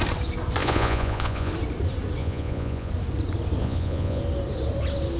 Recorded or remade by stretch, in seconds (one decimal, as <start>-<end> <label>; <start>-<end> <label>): 0.0-0.6 recorded; 0.6-1.5 remade; 1.5-2.2 recorded; 2.2-2.9 remade; 2.9-3.6 recorded; 3.6-4.2 remade; 4.2-5.2 recorded